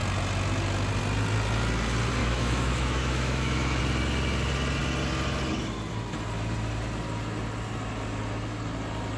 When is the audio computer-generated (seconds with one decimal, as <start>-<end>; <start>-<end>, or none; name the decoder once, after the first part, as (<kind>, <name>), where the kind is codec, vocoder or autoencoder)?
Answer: 2.2-3.8 (autoencoder, DAC-VAE)